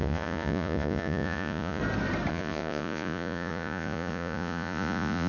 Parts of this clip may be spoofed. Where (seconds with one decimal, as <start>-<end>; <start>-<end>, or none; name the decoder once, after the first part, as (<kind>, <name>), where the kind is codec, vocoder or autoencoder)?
0.0-1.8 (vocoder, Vocos); 2.3-5.3